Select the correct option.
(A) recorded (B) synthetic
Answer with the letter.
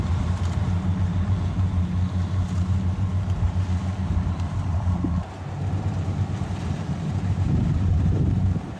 B